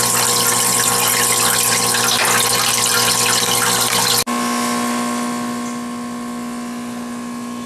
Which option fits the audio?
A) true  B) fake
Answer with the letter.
A